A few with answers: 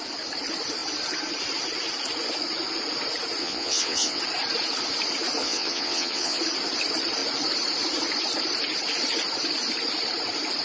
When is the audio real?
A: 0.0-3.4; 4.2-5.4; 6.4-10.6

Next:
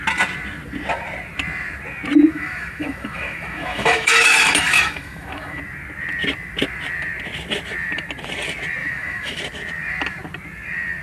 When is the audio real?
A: 0.0-2.3; 5.6-8.8; 9.4-11.0